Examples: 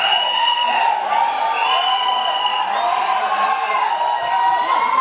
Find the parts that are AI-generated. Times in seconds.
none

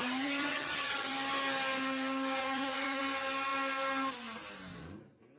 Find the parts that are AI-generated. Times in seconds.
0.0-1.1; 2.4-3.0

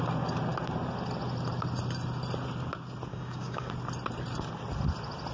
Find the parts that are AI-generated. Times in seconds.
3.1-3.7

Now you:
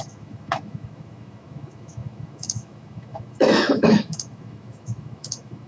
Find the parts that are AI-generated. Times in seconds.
0.0-5.7